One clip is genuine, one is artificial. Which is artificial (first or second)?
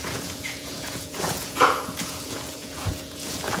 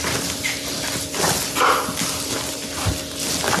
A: first